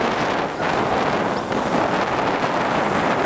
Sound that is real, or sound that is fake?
real